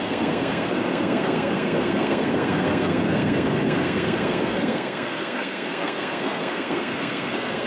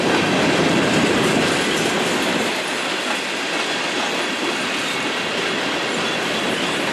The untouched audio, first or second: second